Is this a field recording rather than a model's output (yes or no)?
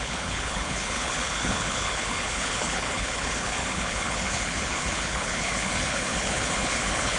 no